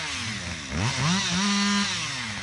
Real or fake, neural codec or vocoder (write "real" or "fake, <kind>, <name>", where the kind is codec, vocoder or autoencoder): real